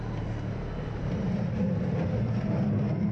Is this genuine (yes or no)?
yes